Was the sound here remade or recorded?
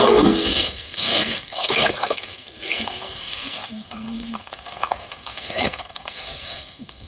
remade